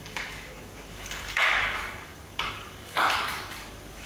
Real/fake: fake